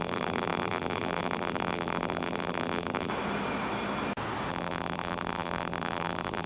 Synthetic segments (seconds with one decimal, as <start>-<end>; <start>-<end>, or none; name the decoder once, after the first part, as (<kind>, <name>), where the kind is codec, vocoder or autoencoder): 0.0-3.1 (vocoder, BigVGAN v2); 4.5-6.5